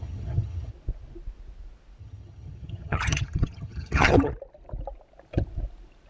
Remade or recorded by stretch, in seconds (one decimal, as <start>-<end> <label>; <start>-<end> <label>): 0.0-0.7 remade; 0.7-2.0 recorded; 2.0-4.3 remade; 4.3-6.1 recorded